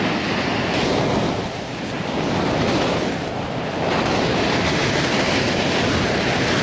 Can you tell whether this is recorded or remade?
recorded